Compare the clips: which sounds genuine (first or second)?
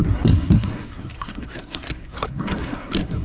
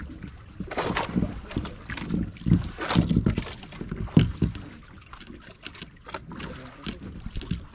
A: second